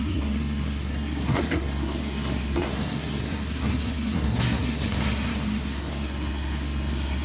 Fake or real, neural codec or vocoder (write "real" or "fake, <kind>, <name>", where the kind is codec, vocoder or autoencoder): fake, codec, SNAC